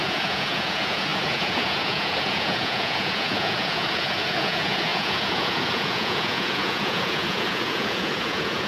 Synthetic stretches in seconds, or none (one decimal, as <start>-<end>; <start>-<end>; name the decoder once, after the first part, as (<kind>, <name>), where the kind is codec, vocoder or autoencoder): 0.0-8.7 (vocoder, Vocos)

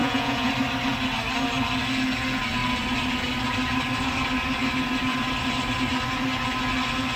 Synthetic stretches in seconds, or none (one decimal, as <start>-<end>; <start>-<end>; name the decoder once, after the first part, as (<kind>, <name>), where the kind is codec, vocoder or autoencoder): 0.0-0.5 (vocoder, Vocos)

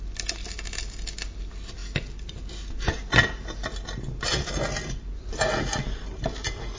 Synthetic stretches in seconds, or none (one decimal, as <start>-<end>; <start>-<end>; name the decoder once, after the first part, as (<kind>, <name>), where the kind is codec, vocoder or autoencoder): none

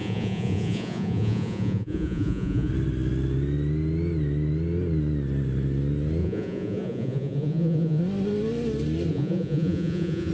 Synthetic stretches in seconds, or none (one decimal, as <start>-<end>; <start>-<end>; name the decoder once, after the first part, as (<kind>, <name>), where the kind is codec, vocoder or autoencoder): 0.0-2.7 (vocoder, Vocos); 6.2-8.0; 9.1-10.3